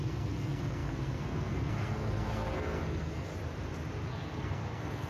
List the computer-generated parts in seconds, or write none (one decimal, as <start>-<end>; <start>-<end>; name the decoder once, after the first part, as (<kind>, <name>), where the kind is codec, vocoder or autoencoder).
0.0-3.3 (codec, SNAC); 4.1-5.1